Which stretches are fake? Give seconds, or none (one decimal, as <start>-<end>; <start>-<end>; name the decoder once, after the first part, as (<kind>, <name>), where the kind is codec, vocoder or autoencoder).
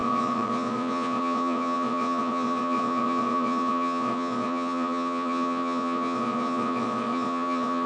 0.0-7.9 (vocoder, Vocos)